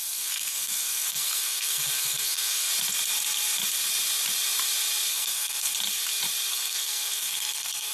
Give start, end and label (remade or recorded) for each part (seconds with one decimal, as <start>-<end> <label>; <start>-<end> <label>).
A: 0.0-2.7 remade; 2.7-5.1 recorded; 5.1-5.7 remade; 5.7-6.5 recorded; 6.5-7.9 remade